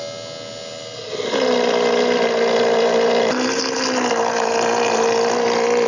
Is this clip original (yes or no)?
yes